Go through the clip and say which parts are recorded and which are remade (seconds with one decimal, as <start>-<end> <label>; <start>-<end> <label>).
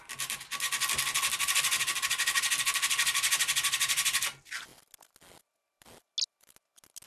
0.0-7.1 recorded